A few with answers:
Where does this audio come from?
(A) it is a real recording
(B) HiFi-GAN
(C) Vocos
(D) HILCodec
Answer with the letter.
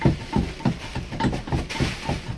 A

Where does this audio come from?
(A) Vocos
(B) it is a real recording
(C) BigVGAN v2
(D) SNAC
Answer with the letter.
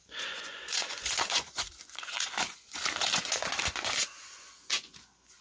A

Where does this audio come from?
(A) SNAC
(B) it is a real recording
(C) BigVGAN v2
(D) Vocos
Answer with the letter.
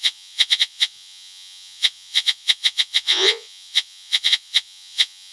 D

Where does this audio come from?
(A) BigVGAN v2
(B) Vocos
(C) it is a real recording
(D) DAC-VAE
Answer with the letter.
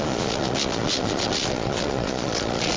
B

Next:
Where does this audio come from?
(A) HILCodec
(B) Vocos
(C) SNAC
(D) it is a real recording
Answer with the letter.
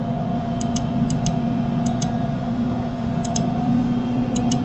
B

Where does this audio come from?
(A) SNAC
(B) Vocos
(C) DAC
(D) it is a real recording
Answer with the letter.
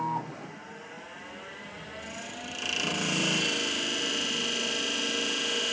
D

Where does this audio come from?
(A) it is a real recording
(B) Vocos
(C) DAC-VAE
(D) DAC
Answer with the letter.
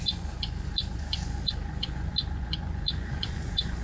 B